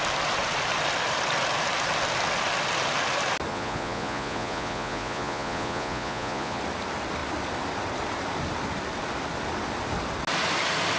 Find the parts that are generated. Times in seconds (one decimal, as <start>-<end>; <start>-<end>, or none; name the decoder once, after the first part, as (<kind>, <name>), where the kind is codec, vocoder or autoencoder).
3.5-6.6 (vocoder, Vocos)